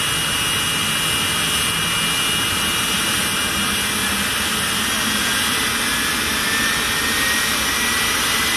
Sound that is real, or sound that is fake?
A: real